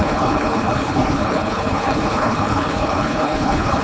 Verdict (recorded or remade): remade